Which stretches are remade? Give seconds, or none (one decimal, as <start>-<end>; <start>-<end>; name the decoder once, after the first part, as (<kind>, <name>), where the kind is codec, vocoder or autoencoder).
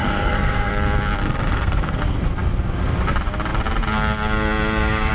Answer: 0.0-0.7 (codec, SNAC); 1.2-2.0